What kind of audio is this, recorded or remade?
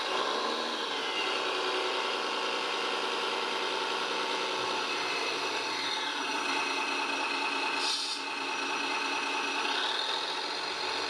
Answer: recorded